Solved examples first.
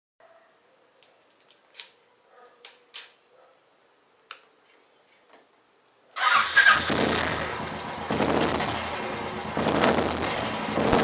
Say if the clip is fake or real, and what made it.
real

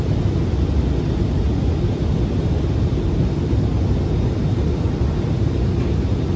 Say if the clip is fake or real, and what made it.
real